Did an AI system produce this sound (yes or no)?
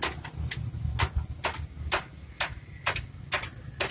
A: no